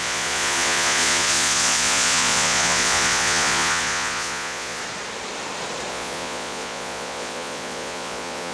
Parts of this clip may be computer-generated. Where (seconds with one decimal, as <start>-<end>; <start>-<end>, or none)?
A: 0.0-4.8; 5.9-8.5